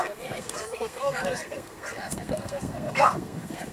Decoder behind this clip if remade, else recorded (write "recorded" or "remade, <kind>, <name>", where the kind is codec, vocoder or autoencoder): remade, codec, SNAC